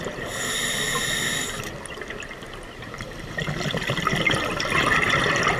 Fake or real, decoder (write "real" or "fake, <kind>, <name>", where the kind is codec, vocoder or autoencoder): real